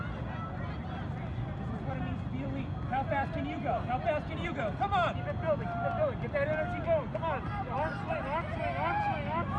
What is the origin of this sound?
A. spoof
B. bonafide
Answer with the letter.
B